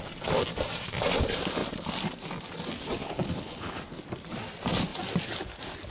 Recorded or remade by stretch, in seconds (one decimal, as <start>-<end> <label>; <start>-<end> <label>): 0.0-3.0 recorded; 3.0-3.8 remade; 3.8-5.9 recorded